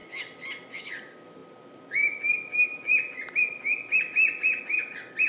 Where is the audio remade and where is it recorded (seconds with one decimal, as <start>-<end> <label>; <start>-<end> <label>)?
0.0-5.3 recorded